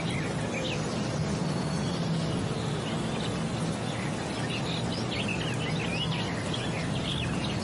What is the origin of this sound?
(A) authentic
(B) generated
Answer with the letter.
A